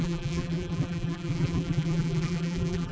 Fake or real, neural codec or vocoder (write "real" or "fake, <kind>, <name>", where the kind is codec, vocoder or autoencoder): fake, vocoder, BigVGAN v2